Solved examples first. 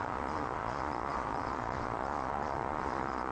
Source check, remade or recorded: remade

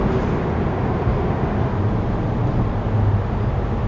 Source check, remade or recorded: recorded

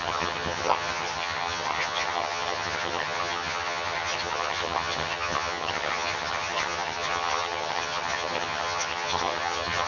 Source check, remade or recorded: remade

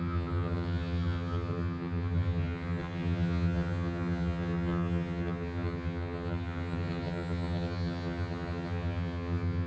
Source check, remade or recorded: remade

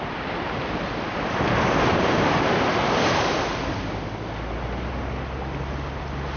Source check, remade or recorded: recorded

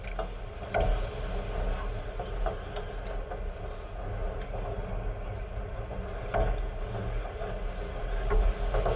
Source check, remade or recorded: recorded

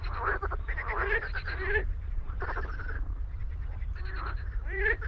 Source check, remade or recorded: remade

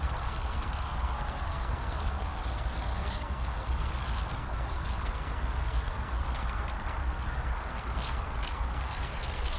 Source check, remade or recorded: remade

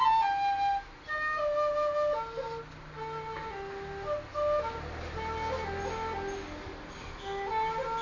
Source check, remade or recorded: recorded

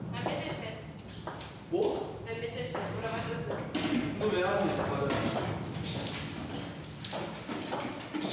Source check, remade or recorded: recorded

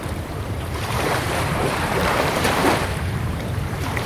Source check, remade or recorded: remade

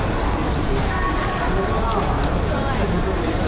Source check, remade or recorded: recorded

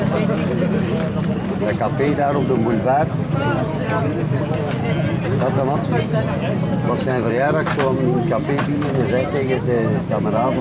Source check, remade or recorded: recorded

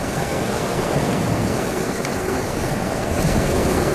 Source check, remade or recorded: remade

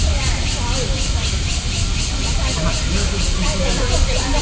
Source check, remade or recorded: recorded